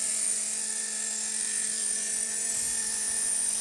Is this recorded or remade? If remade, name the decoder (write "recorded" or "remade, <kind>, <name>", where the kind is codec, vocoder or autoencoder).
remade, vocoder, Vocos